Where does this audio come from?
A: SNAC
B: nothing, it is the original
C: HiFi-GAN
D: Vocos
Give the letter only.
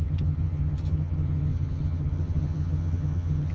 C